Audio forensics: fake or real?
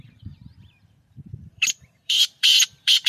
fake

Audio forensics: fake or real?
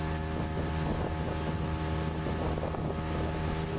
real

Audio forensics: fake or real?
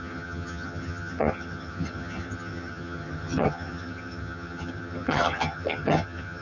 fake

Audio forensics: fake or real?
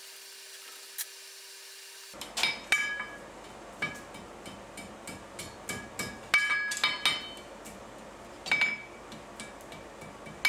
real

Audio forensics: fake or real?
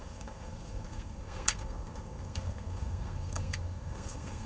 fake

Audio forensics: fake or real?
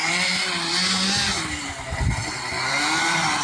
fake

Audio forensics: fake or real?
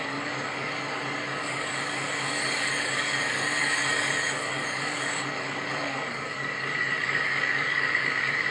fake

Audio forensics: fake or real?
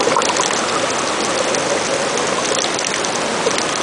real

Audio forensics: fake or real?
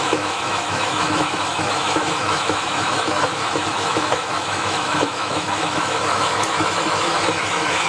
fake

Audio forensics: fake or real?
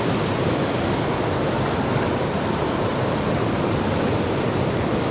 real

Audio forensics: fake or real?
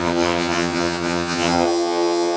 fake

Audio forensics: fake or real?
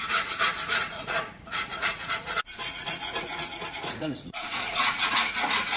fake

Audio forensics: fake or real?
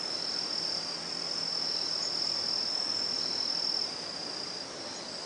real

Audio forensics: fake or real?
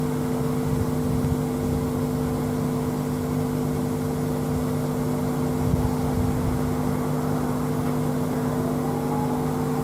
real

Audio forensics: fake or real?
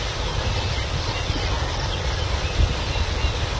real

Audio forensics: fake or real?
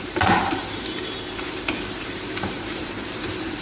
fake